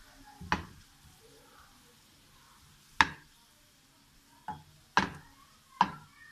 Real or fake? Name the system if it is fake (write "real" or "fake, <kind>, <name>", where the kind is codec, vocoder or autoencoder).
real